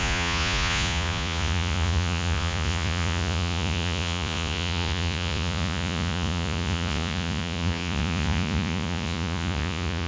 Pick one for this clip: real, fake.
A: fake